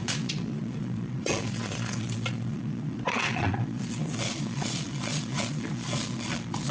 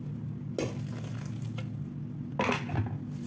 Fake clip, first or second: first